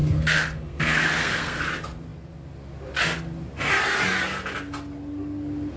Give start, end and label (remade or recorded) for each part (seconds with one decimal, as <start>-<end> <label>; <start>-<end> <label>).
0.0-1.7 remade; 1.7-5.8 recorded

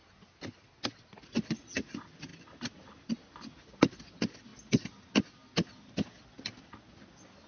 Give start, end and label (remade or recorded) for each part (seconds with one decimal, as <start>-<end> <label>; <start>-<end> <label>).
0.0-7.5 recorded